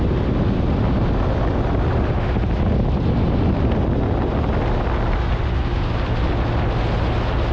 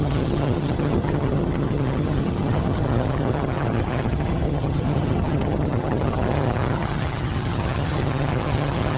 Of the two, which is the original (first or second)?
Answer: first